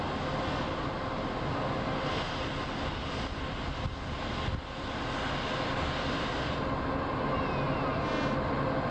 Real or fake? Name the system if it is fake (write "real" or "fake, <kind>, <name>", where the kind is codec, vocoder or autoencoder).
real